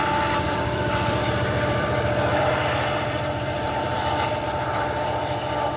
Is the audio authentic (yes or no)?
no